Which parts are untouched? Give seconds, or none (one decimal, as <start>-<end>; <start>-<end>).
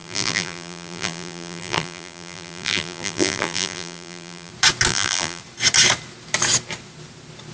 4.5-4.9; 5.4-7.5